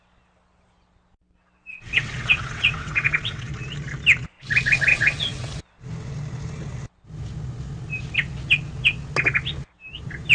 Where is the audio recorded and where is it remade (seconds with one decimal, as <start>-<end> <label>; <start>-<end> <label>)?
0.0-1.7 recorded; 1.7-3.5 remade; 3.5-4.9 recorded; 4.9-5.5 remade; 5.5-10.3 recorded